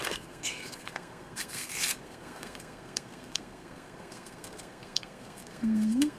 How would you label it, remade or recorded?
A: remade